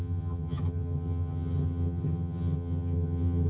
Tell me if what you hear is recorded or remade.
remade